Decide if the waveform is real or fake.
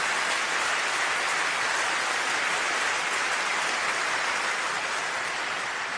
real